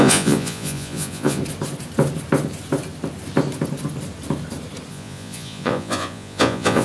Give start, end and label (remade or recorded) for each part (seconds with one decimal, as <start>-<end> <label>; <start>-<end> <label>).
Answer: 0.0-1.4 remade; 1.4-4.9 recorded; 4.9-6.8 remade